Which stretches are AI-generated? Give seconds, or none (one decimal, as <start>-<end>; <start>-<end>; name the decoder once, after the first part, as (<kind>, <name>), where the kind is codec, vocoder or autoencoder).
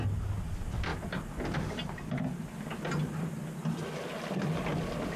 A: none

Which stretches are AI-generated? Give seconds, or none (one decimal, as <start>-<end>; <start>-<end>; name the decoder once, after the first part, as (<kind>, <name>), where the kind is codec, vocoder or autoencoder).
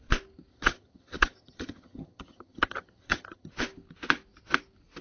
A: 0.5-3.5 (vocoder, HiFi-GAN)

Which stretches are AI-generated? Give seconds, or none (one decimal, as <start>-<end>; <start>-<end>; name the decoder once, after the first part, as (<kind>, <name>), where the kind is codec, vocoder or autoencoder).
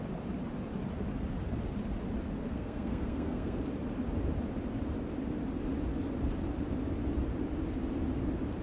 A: 2.4-3.6 (codec, SNAC)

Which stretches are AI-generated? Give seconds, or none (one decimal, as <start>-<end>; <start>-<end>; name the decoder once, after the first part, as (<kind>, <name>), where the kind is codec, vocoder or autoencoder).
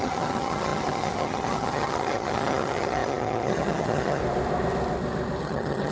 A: 0.0-4.2 (vocoder, HiFi-GAN); 5.4-5.9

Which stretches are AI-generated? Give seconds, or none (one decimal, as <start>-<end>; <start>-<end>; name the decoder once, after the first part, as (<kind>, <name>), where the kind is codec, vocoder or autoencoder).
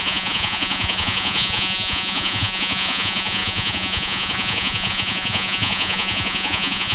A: 0.0-6.9 (vocoder, Vocos)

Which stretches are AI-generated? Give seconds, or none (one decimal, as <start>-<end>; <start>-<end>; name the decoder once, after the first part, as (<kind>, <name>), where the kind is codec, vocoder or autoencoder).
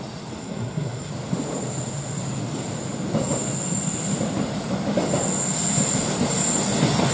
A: 0.4-1.1 (codec, SNAC)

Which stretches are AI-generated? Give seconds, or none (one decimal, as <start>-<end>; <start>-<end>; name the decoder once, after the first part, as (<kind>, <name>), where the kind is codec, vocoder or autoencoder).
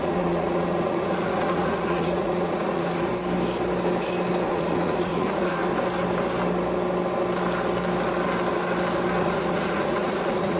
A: 0.0-3.1 (vocoder, Vocos); 4.5-5.6; 9.2-10.6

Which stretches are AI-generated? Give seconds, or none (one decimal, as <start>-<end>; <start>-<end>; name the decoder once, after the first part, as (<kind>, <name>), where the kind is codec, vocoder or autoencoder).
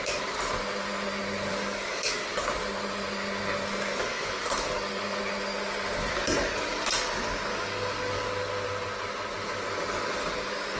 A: 1.5-2.4 (codec, DAC); 4.0-5.2; 7.5-8.3